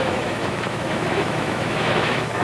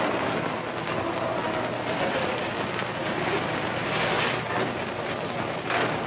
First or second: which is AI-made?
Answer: first